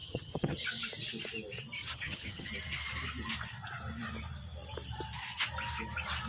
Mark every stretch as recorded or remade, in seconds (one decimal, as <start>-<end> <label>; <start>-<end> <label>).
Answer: 0.0-0.6 remade; 0.6-1.8 recorded; 1.8-2.5 remade; 2.5-6.3 recorded